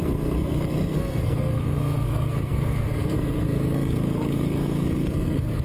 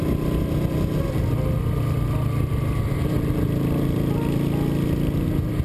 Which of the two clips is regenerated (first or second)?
first